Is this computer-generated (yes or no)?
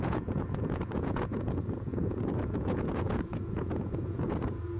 yes